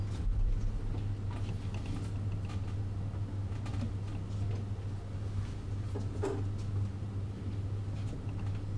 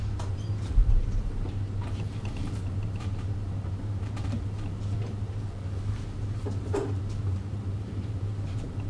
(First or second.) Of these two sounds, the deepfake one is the second